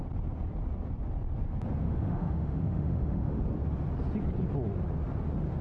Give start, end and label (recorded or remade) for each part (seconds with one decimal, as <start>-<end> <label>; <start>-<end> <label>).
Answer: 0.0-1.8 recorded; 1.8-3.4 remade; 3.4-5.6 recorded